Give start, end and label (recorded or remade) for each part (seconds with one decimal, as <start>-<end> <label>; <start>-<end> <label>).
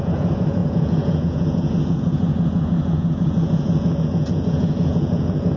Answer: 0.0-5.6 remade